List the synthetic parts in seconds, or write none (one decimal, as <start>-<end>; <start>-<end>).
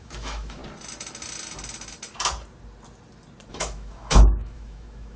0.0-0.6; 3.5-5.2